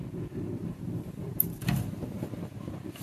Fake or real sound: real